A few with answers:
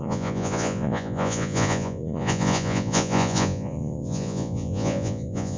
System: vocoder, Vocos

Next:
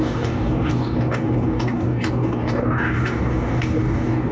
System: codec, DAC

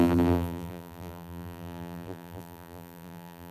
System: vocoder, BigVGAN v2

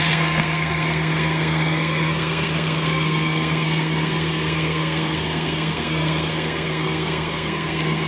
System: codec, SNAC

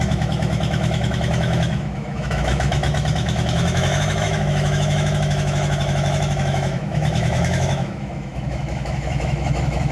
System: autoencoder, DAC-VAE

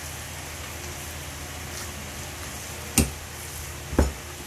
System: none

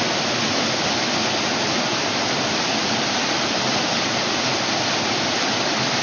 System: none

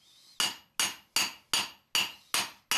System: none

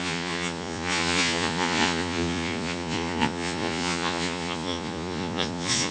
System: vocoder, Vocos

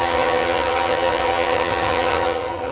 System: vocoder, HiFi-GAN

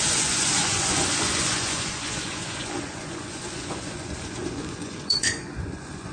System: vocoder, Vocos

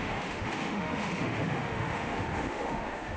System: autoencoder, DAC-VAE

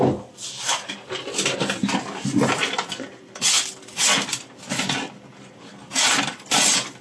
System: none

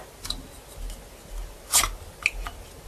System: none